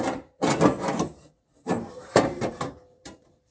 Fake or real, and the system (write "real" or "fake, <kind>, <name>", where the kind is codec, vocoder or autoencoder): fake, vocoder, BigVGAN v2